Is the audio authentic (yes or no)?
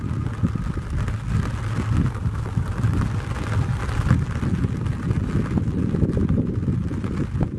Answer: yes